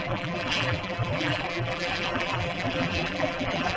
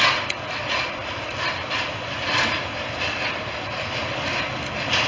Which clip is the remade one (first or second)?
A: first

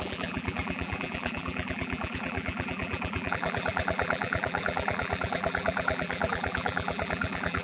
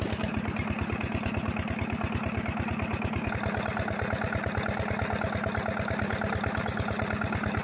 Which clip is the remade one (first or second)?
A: first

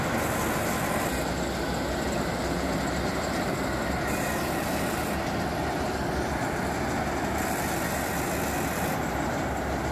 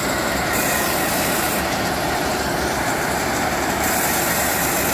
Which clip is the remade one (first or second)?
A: second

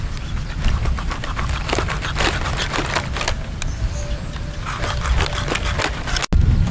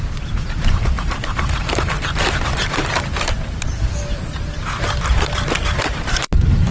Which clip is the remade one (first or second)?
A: second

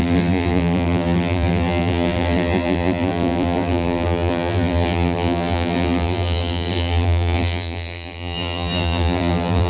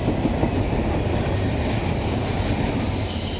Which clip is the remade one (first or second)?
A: first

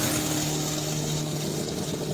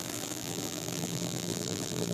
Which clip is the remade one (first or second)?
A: second